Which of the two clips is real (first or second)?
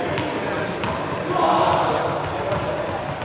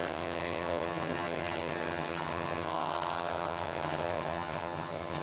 first